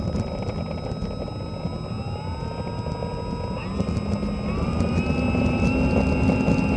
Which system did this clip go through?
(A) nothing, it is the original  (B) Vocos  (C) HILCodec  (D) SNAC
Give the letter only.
A